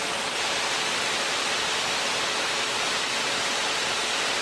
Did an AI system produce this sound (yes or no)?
no